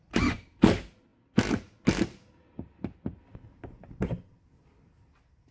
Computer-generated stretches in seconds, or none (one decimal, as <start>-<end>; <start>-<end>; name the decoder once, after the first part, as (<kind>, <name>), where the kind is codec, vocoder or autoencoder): none